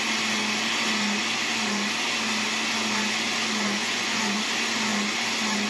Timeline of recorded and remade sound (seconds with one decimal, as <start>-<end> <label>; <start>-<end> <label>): 0.0-3.8 recorded; 3.8-4.4 remade; 4.4-5.7 recorded